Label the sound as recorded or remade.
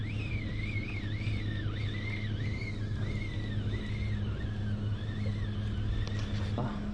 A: recorded